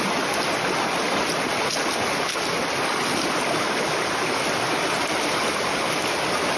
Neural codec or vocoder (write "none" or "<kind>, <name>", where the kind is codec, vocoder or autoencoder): none